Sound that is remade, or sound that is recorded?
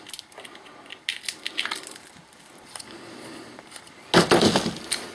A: recorded